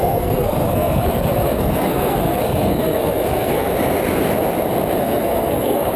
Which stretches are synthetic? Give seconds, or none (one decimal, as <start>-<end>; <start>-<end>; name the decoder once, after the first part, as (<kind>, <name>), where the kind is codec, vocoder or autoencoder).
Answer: 0.0-3.7 (codec, SNAC); 5.0-6.0